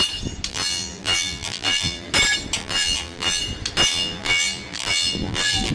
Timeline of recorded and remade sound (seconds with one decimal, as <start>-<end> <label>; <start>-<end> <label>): 0.0-0.5 recorded; 0.5-2.1 remade; 2.1-2.6 recorded; 2.6-3.4 remade; 3.4-3.9 recorded; 3.9-5.7 remade